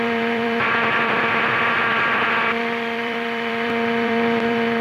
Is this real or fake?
fake